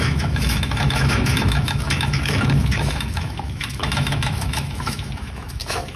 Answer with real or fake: fake